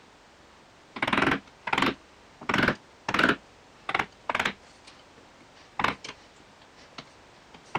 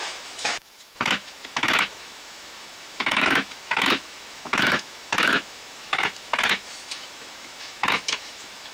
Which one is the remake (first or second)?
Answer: second